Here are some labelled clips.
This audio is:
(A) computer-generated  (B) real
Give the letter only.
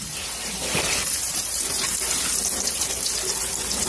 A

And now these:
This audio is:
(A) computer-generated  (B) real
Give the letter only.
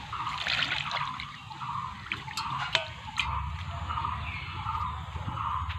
B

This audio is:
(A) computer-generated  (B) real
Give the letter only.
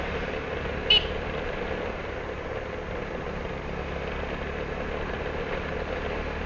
B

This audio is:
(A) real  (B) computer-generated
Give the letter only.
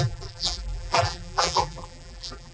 B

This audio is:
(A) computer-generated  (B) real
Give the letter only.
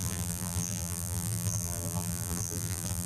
A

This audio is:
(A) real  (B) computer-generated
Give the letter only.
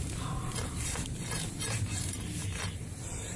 B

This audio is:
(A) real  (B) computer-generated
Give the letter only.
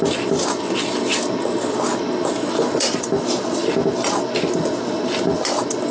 A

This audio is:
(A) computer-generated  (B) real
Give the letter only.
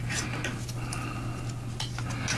B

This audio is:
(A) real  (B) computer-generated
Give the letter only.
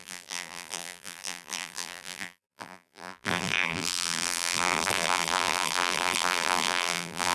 B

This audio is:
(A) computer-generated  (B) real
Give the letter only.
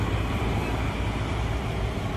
B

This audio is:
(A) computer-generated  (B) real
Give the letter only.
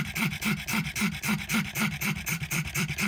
A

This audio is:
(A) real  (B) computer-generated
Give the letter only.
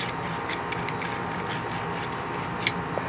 A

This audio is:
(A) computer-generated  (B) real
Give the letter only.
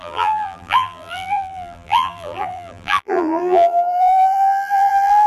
A